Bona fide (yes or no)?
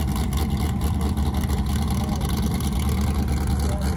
yes